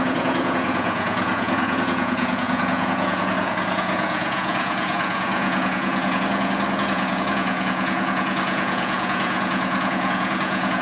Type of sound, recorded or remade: remade